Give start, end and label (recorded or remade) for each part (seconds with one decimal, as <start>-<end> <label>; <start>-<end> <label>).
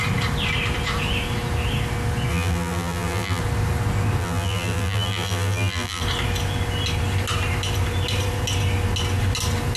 0.0-2.3 recorded; 2.3-3.4 remade; 3.4-4.2 recorded; 4.2-6.0 remade; 6.0-9.8 recorded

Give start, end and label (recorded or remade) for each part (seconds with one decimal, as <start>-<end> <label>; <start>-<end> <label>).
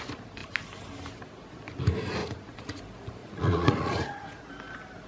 0.0-2.2 recorded; 2.2-2.8 remade; 2.8-3.2 recorded; 3.2-4.5 remade; 4.5-5.1 recorded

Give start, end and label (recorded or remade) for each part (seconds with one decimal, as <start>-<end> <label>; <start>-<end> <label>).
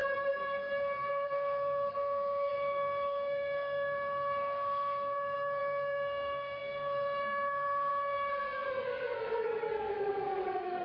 0.0-10.8 remade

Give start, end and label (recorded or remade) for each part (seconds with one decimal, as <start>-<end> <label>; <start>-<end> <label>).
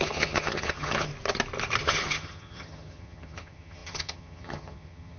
0.0-1.1 remade; 1.1-1.8 recorded; 1.8-5.2 remade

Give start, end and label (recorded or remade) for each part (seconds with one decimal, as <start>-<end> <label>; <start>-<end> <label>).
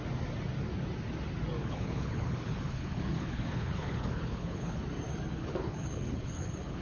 0.0-1.6 recorded; 1.6-4.8 remade; 4.8-5.3 recorded; 5.3-6.8 remade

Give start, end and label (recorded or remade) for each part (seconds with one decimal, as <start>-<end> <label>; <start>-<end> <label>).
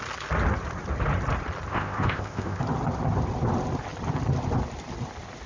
0.0-1.7 recorded; 1.7-2.6 remade; 2.6-5.5 recorded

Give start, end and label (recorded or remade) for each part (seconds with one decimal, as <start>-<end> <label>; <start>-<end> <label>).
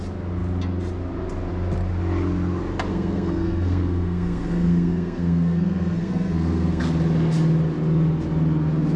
0.0-2.9 recorded; 2.9-6.8 remade; 6.8-9.0 recorded